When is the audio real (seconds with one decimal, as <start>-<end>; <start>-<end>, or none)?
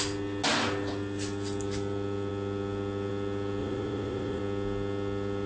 0.0-3.6; 4.4-5.5